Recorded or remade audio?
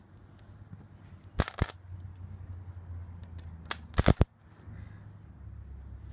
recorded